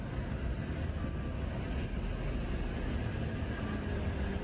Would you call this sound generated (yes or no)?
no